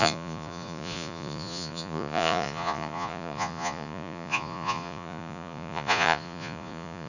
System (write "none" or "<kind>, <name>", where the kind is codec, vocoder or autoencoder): vocoder, Vocos